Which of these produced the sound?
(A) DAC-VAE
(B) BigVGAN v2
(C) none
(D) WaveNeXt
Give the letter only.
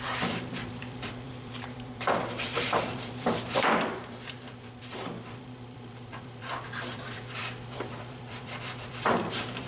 B